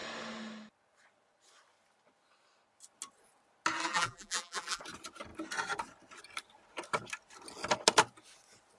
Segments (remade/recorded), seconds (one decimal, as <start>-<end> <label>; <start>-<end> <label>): 0.0-3.8 recorded; 3.8-4.8 remade; 4.8-8.8 recorded